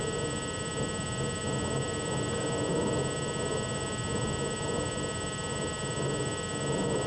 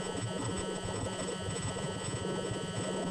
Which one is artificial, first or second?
second